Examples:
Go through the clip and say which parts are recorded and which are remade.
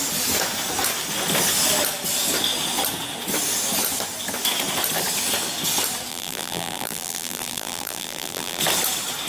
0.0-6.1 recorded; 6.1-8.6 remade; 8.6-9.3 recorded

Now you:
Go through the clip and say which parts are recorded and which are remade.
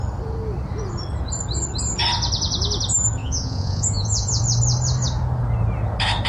0.0-3.2 recorded; 3.2-4.4 remade; 4.4-6.3 recorded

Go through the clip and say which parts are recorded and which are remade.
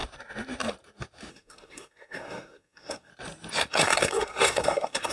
0.0-1.3 recorded; 1.3-3.1 remade; 3.1-3.7 recorded; 3.7-5.1 remade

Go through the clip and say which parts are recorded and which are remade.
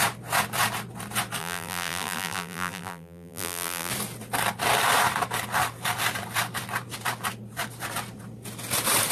0.0-1.4 recorded; 1.4-3.9 remade; 3.9-9.1 recorded